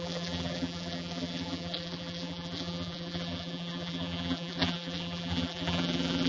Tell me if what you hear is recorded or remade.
remade